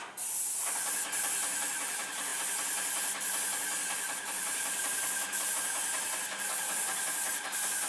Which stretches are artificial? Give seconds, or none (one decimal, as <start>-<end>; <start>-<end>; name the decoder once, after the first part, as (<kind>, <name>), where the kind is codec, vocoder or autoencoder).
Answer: none